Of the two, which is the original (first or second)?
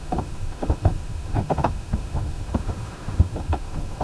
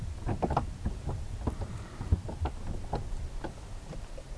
second